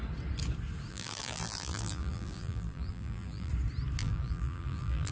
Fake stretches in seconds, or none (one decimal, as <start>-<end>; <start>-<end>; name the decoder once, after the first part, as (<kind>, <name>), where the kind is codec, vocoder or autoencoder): 0.9-3.5 (vocoder, BigVGAN v2); 4.0-5.1